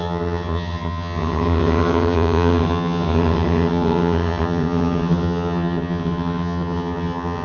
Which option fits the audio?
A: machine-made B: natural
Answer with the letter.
A